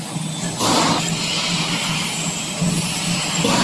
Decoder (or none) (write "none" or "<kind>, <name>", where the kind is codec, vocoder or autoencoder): none